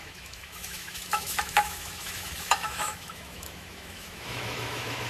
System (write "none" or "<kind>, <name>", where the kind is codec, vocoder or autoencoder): autoencoder, DAC-VAE